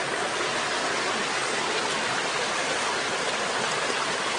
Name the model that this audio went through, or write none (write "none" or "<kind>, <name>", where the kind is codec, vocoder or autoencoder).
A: none